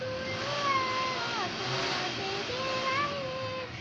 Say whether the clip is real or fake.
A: real